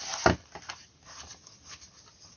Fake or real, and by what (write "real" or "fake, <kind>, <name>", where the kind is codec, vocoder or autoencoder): real